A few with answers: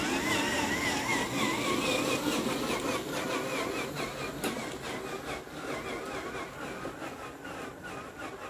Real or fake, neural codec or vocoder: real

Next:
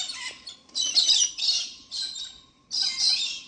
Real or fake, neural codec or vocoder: real